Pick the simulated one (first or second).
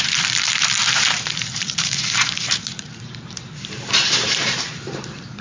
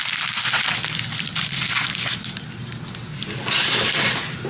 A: first